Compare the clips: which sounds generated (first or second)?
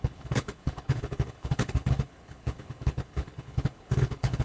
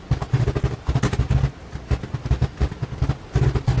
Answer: first